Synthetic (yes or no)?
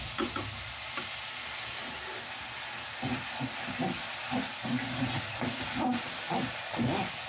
no